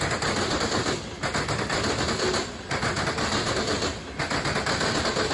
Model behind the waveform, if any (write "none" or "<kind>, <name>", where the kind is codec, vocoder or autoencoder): none